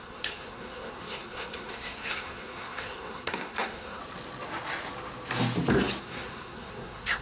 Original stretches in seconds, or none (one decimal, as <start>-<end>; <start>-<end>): 4.0-6.0